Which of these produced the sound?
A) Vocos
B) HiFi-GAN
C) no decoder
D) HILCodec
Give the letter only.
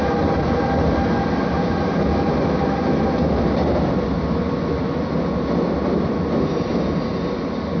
C